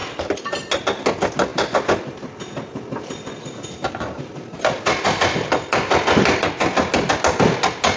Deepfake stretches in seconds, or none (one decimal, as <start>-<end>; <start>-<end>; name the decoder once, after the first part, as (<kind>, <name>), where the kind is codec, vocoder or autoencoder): none